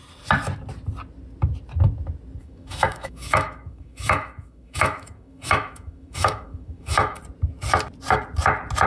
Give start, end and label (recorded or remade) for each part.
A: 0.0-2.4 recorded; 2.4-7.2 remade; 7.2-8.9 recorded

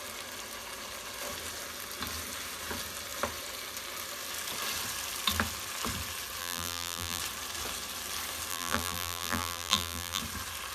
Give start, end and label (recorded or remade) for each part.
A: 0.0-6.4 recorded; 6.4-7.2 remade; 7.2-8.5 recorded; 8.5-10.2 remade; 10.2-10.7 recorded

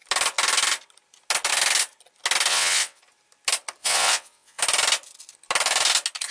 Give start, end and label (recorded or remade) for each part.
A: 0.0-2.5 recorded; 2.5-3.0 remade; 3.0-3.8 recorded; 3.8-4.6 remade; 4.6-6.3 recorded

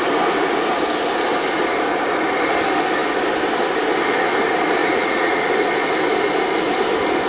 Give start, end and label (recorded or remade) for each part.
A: 0.0-4.8 recorded; 4.8-5.5 remade; 5.5-7.3 recorded